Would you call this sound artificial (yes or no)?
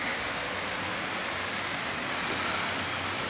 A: no